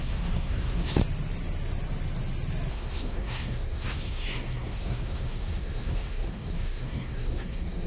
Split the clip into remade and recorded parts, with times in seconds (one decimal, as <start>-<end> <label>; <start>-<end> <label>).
0.0-1.0 remade; 1.0-2.7 recorded; 2.7-7.9 remade